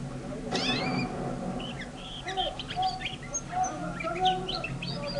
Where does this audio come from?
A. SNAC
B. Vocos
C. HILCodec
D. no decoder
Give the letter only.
D